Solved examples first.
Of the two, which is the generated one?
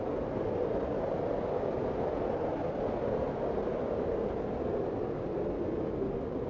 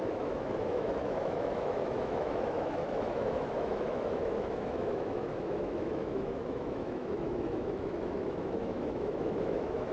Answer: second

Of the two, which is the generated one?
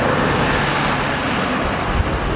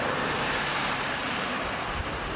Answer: second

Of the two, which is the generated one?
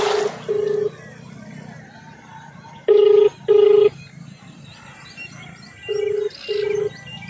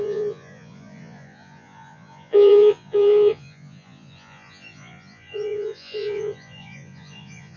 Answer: second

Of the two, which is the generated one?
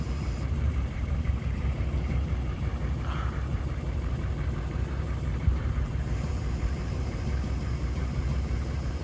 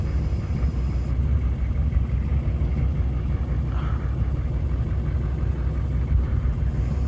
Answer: first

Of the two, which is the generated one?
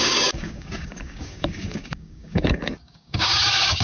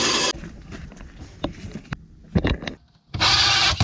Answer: first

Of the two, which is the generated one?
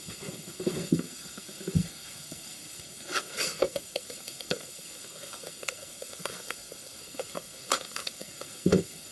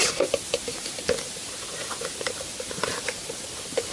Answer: first